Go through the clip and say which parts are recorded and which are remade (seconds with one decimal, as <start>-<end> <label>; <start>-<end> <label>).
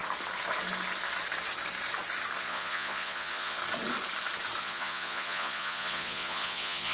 0.0-2.4 recorded; 2.4-3.6 remade; 3.6-4.6 recorded; 4.6-6.9 remade